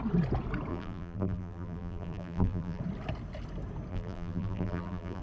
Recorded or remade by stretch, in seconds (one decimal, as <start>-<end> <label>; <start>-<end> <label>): 0.0-0.7 recorded; 0.7-2.8 remade; 2.8-3.9 recorded; 3.9-5.2 remade